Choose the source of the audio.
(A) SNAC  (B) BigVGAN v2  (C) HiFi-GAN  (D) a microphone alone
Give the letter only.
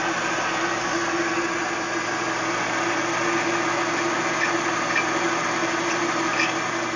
D